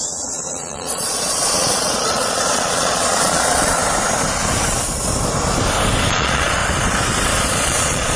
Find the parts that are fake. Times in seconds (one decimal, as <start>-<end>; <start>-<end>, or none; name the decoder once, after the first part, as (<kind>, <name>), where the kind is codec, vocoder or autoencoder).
0.0-3.8 (vocoder, Vocos); 6.1-6.6; 7.5-8.2